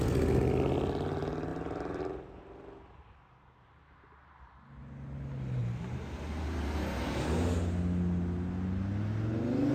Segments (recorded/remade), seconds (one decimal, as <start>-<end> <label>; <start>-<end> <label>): 0.0-1.5 recorded; 1.5-2.0 remade; 2.0-5.6 recorded; 5.6-7.0 remade; 7.0-9.7 recorded